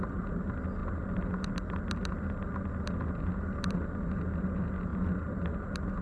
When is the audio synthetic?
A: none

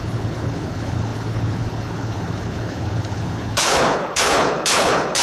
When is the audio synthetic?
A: 0.0-5.2

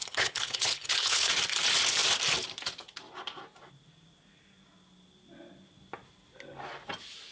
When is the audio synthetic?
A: 0.0-1.3

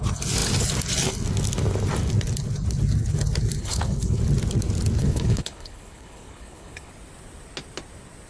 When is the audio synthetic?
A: 3.6-4.2; 5.0-6.9

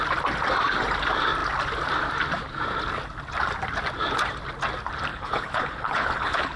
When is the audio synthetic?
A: 5.1-6.6

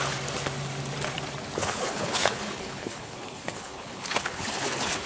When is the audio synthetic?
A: 1.6-5.1

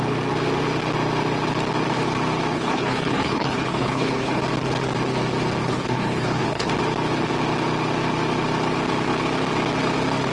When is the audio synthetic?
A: 2.5-4.4; 5.6-6.7